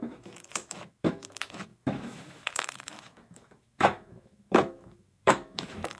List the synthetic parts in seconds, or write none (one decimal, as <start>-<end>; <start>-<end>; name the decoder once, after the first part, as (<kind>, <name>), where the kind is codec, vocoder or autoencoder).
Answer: 0.0-6.0 (autoencoder, DAC-VAE)

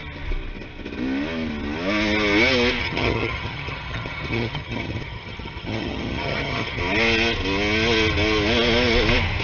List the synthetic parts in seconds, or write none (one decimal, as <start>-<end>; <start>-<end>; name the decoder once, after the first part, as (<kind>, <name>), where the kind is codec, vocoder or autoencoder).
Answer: 2.8-6.8 (vocoder, HiFi-GAN)